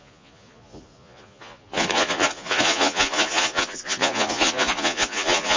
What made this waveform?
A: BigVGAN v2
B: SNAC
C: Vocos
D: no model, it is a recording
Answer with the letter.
C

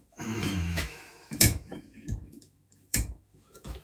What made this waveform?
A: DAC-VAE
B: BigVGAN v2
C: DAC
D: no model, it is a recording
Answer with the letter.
A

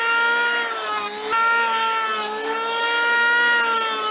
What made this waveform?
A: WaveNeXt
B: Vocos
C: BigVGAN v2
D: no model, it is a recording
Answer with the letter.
D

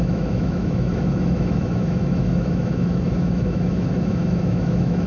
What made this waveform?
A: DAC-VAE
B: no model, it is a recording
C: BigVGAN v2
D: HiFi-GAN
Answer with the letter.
A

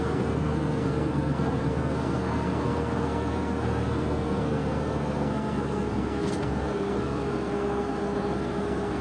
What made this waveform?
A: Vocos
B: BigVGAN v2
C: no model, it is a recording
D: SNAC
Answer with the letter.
D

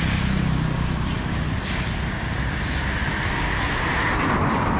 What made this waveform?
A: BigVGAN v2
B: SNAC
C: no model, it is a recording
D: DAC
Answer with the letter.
C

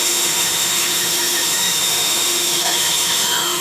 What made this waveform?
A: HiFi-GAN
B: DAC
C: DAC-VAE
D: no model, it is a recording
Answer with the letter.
C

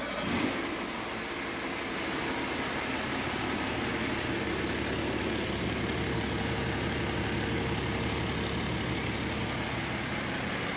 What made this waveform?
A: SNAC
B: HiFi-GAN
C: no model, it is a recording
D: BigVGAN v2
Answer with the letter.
C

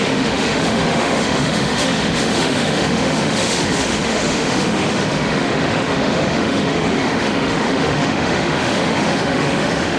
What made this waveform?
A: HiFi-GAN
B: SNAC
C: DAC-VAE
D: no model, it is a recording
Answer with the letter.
C